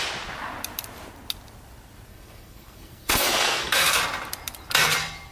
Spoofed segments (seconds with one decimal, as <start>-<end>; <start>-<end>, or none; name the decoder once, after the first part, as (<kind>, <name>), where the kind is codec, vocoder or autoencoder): 2.1-3.9 (codec, SNAC)